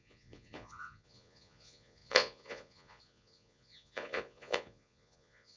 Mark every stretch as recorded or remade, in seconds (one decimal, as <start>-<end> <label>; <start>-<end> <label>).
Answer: 0.0-5.6 remade